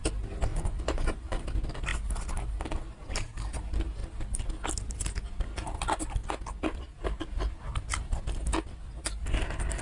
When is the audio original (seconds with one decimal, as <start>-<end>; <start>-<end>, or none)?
0.0-0.5; 1.4-9.8